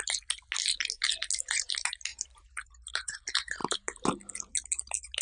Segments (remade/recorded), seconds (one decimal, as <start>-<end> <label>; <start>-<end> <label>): 0.0-2.1 recorded; 2.1-3.2 remade; 3.2-5.2 recorded